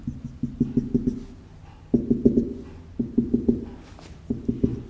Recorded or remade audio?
recorded